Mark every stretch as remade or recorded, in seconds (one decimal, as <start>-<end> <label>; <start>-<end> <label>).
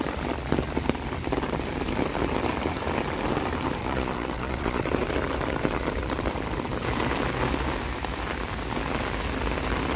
0.0-3.8 recorded; 3.8-4.9 remade; 4.9-10.0 recorded